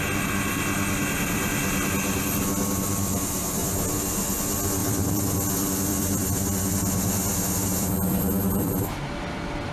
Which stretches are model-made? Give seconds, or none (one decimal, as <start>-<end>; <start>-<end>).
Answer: 3.6-4.2; 4.8-9.7